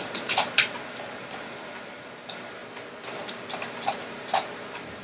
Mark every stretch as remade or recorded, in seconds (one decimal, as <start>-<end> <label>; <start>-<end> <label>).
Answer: 0.0-2.6 remade; 2.6-4.0 recorded; 4.0-5.0 remade